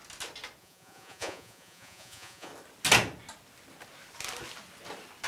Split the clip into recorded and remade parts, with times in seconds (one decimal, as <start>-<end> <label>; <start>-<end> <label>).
0.0-0.6 recorded; 0.6-2.5 remade; 2.5-5.3 recorded